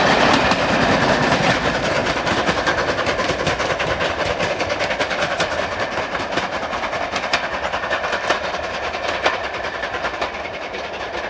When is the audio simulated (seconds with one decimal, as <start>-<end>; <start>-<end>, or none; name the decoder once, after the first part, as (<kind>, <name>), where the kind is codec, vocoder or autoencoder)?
none